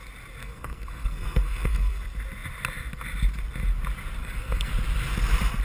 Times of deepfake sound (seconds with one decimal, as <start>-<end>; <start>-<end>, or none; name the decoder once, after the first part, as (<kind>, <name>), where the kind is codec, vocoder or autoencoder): 0.4-2.0 (codec, SNAC); 4.2-4.7